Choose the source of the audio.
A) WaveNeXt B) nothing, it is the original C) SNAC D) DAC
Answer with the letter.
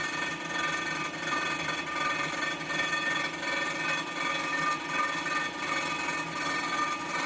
B